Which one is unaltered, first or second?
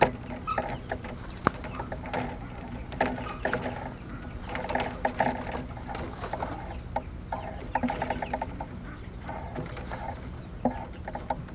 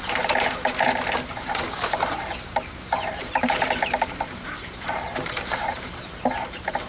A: first